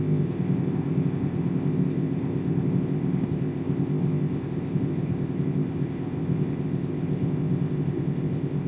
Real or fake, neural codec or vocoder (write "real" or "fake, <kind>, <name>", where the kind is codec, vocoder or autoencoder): fake, codec, ZipCodec